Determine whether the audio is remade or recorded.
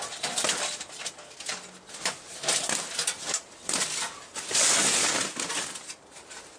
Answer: recorded